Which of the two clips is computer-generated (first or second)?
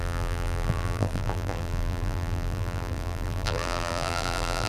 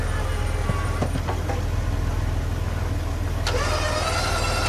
first